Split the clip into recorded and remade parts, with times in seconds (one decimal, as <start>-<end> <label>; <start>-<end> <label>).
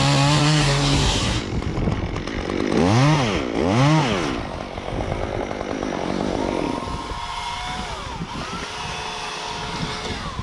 0.0-0.4 recorded; 0.4-1.4 remade; 1.4-10.4 recorded